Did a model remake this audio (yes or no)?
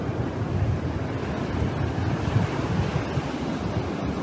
no